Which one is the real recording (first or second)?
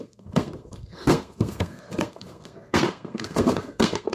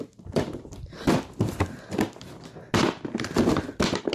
second